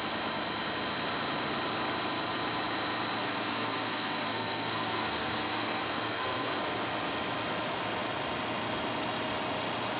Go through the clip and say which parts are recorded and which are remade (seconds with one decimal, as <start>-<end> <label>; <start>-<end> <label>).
0.0-3.2 recorded; 3.2-6.6 remade; 6.6-10.0 recorded